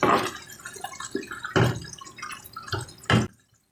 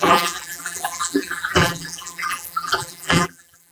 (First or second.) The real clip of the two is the first